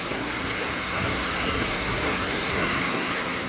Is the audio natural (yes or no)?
no